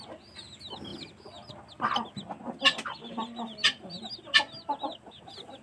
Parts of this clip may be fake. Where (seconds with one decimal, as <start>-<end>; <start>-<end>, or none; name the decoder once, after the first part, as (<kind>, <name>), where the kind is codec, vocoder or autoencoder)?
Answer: none